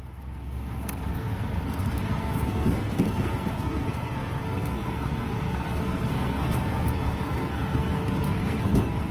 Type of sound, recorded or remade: remade